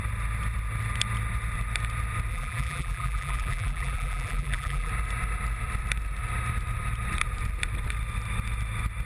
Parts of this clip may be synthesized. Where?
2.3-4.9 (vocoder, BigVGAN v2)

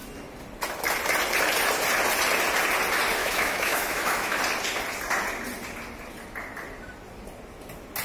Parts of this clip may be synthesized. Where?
3.2-4.4 (autoencoder, DAC-VAE)

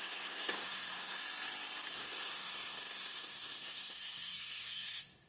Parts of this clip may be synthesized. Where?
0.0-1.2 (codec, SNAC); 1.9-5.3

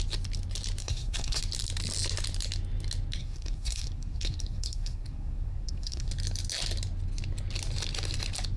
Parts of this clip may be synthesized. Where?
0.8-1.4 (codec, SNAC); 3.2-6.1

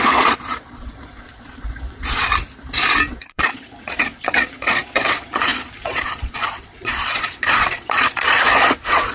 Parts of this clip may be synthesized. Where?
0.0-2.3 (vocoder, Vocos); 3.1-9.1

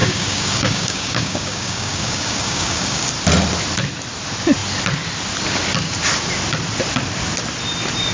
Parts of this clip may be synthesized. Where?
0.0-3.1 (codec, DAC)

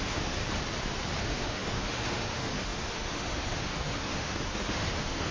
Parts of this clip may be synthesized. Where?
0.0-0.4 (autoencoder, DAC-VAE); 1.2-5.3